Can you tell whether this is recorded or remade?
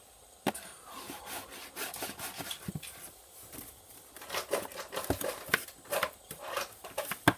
recorded